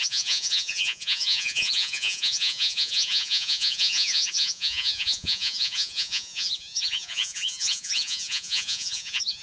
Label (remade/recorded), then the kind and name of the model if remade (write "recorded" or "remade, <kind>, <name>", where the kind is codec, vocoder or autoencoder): remade, vocoder, Vocos